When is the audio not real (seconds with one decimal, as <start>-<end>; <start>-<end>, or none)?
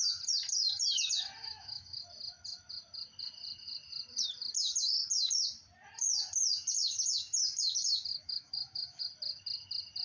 1.4-2.0; 8.1-9.0